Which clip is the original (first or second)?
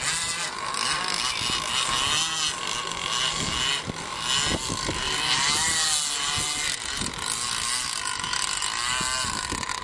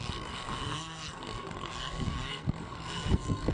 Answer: first